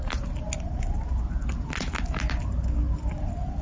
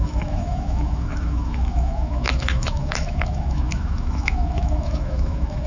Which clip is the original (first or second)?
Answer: first